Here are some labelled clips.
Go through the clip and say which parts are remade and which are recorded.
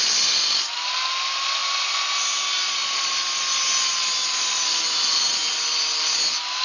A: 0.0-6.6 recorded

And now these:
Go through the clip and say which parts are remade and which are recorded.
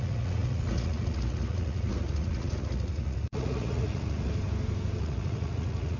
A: 0.0-4.3 remade; 4.3-5.0 recorded; 5.0-6.0 remade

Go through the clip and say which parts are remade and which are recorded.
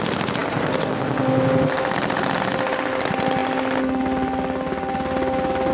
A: 0.0-5.7 recorded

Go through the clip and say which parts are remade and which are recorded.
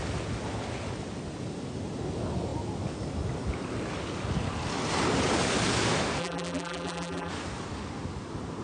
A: 0.0-6.2 recorded; 6.2-7.3 remade; 7.3-8.6 recorded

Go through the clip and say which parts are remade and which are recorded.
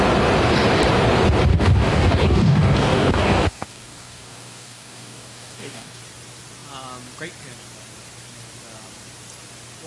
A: 0.0-1.5 recorded; 1.5-6.0 remade; 6.0-9.9 recorded